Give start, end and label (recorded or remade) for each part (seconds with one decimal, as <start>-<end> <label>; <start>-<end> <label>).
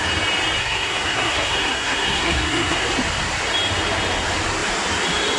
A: 0.0-0.6 recorded; 0.6-2.8 remade; 2.8-5.4 recorded